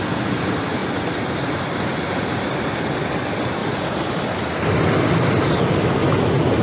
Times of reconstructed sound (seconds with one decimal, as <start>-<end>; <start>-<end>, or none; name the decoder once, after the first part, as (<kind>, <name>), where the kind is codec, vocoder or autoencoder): none